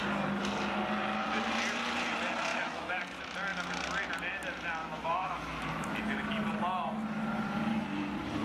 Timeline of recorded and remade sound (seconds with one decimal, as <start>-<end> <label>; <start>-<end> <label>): 0.0-2.5 recorded; 2.5-3.0 remade; 3.0-4.8 recorded; 4.8-5.4 remade; 5.4-8.4 recorded